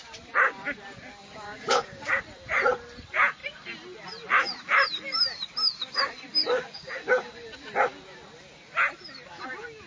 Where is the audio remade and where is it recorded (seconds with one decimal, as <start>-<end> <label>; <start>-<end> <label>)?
0.0-1.2 recorded; 1.2-2.2 remade; 2.2-6.4 recorded; 6.4-6.9 remade; 6.9-9.9 recorded